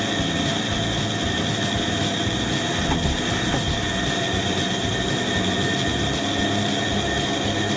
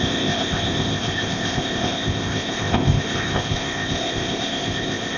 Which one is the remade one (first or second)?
second